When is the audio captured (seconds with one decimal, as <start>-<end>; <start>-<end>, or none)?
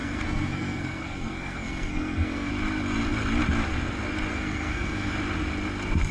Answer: 2.5-4.3; 5.1-6.1